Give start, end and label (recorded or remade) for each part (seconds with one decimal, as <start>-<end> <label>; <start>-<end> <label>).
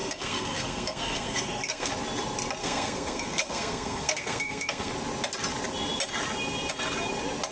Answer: 0.0-1.9 remade; 1.9-2.6 recorded; 2.6-4.9 remade; 4.9-7.5 recorded